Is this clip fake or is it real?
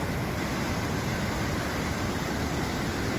real